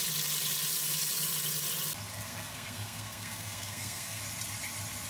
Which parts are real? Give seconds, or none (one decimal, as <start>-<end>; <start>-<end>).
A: 0.0-2.1; 4.2-5.1